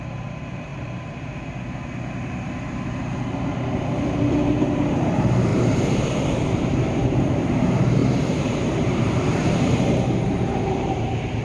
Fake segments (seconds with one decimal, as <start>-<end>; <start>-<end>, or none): 0.0-0.7; 4.2-11.4